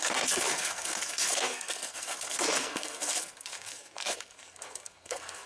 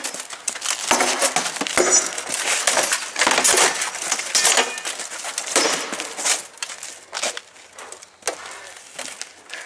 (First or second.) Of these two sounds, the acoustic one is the second